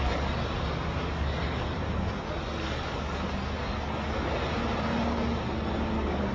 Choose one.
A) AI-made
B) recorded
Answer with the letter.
B